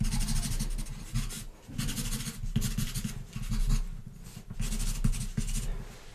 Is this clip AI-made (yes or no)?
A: no